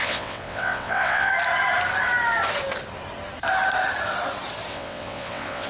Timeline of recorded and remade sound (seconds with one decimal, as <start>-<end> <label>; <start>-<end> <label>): 0.0-1.3 remade; 1.3-4.7 recorded; 4.7-5.7 remade